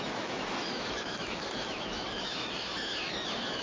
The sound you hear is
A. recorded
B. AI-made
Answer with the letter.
B